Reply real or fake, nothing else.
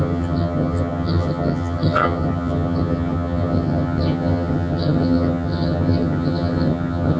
fake